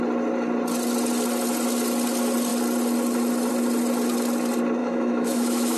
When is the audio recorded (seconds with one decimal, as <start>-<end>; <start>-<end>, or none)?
0.0-4.8